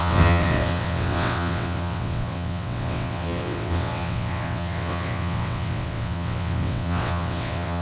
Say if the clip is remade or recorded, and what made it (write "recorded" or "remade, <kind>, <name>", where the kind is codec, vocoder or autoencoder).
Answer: remade, vocoder, WaveNeXt